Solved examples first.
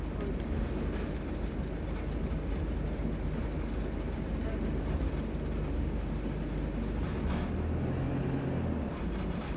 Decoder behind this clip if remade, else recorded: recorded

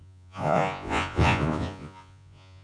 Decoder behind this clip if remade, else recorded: remade, vocoder, Vocos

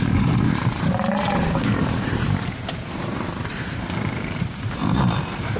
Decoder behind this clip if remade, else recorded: remade, vocoder, BigVGAN v2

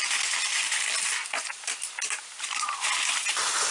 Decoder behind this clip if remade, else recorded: recorded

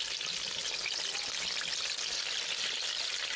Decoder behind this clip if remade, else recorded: recorded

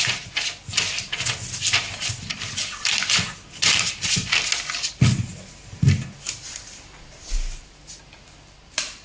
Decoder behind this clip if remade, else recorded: recorded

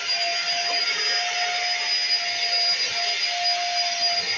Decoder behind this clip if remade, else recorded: recorded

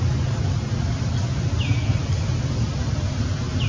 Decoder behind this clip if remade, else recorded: recorded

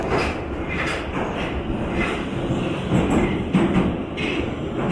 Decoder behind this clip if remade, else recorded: remade, vocoder, BigVGAN v2